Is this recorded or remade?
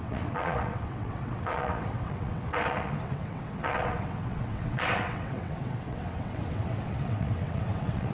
remade